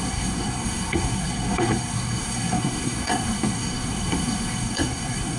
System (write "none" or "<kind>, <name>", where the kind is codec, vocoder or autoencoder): codec, SNAC